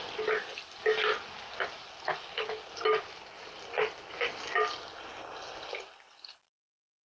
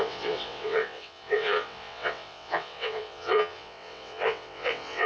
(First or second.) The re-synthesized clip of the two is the second